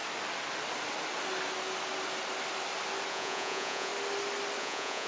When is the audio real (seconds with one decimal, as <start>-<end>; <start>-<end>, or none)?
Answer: 0.0-3.1; 3.9-4.6